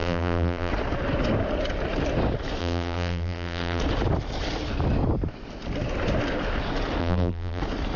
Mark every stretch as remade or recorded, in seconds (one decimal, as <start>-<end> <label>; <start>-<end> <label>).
0.0-0.7 remade; 0.7-2.6 recorded; 2.6-3.8 remade; 3.8-7.0 recorded; 7.0-7.6 remade; 7.6-8.0 recorded